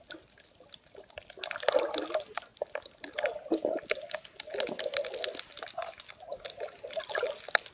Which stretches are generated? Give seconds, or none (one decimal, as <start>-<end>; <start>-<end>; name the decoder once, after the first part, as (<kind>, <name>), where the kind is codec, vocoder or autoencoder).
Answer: none